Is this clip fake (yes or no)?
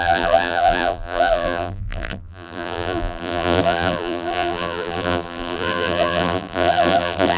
yes